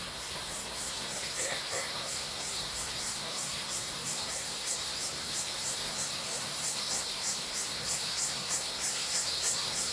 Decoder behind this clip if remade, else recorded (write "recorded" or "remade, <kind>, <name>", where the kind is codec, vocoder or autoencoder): remade, codec, SNAC